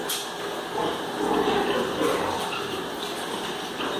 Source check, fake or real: real